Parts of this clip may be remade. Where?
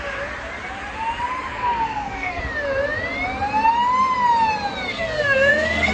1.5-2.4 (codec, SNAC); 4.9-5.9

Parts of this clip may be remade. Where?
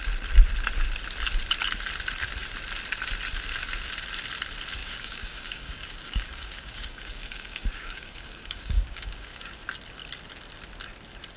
4.8-9.5 (codec, DAC)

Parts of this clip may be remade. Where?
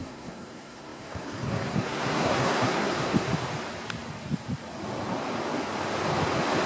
0.0-3.3 (codec, SNAC)